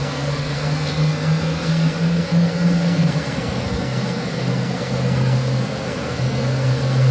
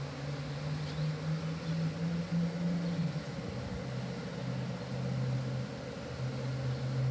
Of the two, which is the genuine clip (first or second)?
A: second